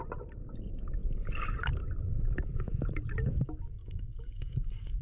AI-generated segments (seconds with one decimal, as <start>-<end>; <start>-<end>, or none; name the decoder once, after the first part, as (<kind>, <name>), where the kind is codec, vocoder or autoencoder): 3.8-5.0 (codec, DAC)